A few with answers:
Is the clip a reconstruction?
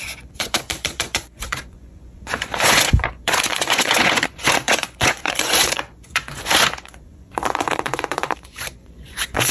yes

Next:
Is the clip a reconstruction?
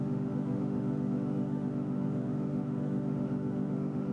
yes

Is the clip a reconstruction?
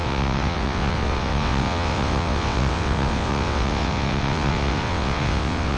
yes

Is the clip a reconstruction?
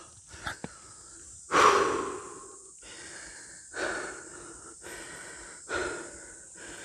no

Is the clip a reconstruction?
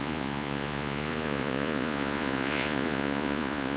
yes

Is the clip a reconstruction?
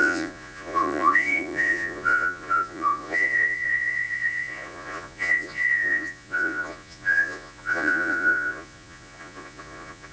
yes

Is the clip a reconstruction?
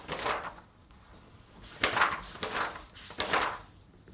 no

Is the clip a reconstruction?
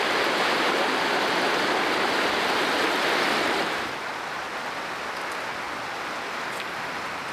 no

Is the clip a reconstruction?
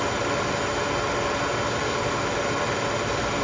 no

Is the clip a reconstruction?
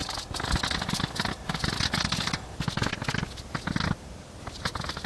no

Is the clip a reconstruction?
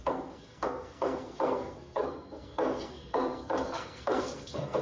yes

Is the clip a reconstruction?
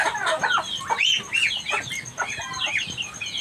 no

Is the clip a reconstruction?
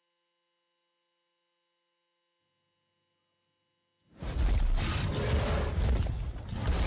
no